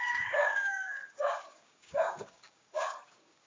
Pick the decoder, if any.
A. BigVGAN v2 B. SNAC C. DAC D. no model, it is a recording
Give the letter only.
C